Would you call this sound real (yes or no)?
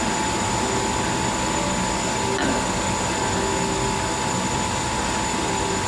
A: yes